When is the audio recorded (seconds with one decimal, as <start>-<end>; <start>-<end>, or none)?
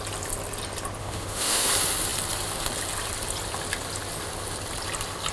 0.0-1.0; 1.7-5.3